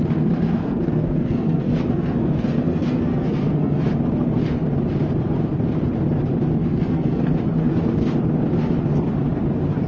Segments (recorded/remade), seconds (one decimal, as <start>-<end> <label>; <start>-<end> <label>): 0.0-0.6 recorded; 0.6-3.8 remade; 3.8-6.7 recorded; 6.7-7.3 remade; 7.3-9.9 recorded